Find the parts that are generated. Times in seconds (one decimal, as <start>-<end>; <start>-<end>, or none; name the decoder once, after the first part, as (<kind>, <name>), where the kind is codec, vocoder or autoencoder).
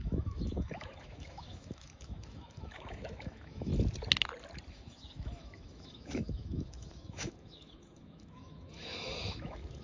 0.0-3.7 (autoencoder, DAC-VAE); 4.7-9.8